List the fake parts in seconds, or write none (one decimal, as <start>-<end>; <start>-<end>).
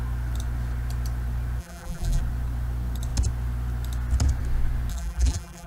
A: 1.6-2.2; 4.9-5.7